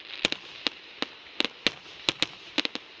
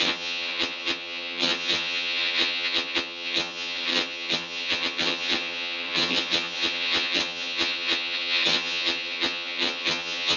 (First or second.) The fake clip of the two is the second